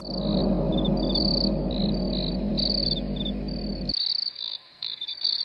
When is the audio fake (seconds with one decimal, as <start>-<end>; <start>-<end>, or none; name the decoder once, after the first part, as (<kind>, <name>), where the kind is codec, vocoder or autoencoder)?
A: 4.3-5.4 (codec, SNAC)